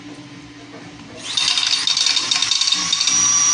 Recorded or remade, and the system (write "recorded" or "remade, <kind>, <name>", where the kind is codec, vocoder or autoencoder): recorded